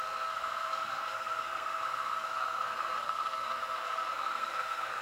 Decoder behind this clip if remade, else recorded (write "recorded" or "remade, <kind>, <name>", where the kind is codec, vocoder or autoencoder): remade, codec, SNAC